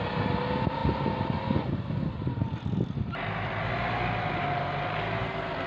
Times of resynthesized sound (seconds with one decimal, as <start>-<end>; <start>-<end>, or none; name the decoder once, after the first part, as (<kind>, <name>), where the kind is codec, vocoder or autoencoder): none